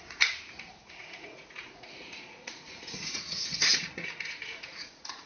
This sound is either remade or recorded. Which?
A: remade